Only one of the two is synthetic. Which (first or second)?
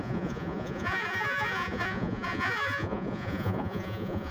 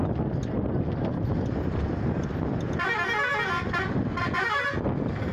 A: first